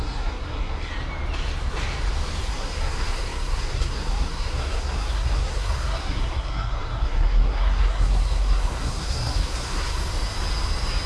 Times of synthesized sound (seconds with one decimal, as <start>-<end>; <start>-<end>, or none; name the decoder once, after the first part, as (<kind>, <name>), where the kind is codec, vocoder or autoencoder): 0.0-0.9 (codec, SNAC); 2.4-10.1